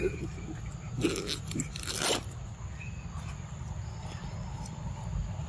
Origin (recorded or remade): recorded